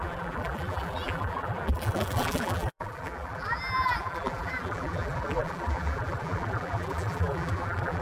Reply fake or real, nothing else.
fake